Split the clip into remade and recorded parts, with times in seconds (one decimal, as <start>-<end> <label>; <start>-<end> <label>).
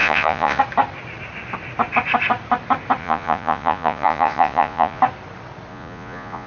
0.0-0.6 remade; 0.6-3.0 recorded; 3.0-5.0 remade; 5.0-5.7 recorded; 5.7-6.5 remade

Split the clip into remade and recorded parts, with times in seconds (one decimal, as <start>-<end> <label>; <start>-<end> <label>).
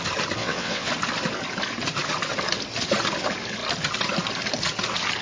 0.0-0.4 recorded; 0.4-0.9 remade; 0.9-5.2 recorded